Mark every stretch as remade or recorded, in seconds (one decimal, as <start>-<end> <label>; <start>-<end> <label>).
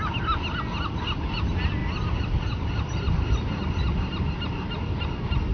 0.0-5.5 recorded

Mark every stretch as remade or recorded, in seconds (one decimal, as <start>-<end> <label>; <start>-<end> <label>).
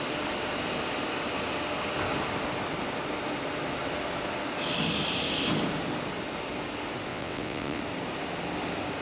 0.0-7.1 recorded; 7.1-7.8 remade; 7.8-9.0 recorded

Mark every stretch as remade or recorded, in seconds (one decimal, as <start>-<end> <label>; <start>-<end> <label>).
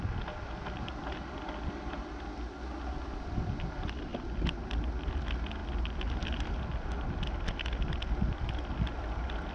0.0-9.5 recorded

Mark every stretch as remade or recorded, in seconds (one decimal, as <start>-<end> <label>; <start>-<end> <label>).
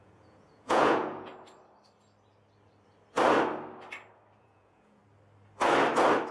0.0-1.3 remade; 1.3-4.4 recorded; 4.4-5.0 remade; 5.0-6.3 recorded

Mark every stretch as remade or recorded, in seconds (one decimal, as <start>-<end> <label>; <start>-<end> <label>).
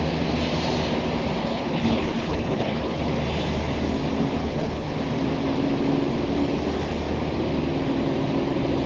0.0-1.4 recorded; 1.4-3.1 remade; 3.1-4.4 recorded; 4.4-4.9 remade; 4.9-8.9 recorded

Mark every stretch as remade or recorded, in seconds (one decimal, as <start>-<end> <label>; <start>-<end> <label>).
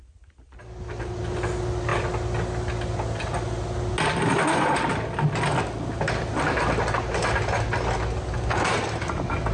0.0-9.5 recorded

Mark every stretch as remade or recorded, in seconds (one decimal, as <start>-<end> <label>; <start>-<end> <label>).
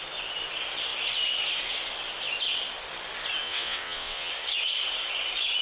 0.0-3.4 recorded; 3.4-4.3 remade; 4.3-5.6 recorded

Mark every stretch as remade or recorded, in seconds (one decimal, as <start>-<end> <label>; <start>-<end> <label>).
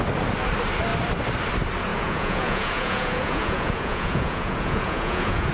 0.0-1.9 recorded; 1.9-5.5 remade